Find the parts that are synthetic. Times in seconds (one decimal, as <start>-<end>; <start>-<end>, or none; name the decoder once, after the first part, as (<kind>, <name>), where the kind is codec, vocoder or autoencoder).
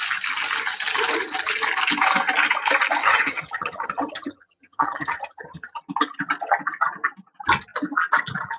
3.0-5.8 (vocoder, HiFi-GAN)